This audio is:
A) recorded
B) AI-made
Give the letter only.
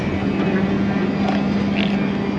A